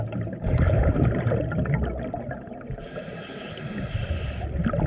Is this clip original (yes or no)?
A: yes